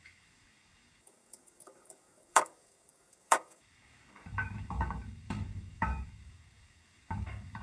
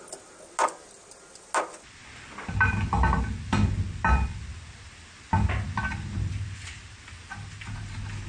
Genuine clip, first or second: second